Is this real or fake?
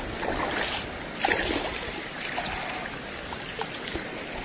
real